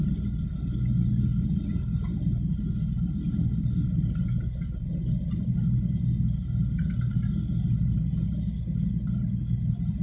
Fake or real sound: real